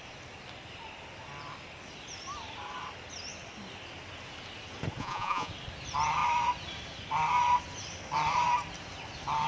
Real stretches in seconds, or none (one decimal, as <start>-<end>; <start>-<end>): 0.0-5.0; 5.5-9.5